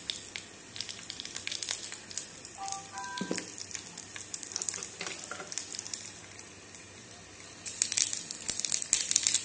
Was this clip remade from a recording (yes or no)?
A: no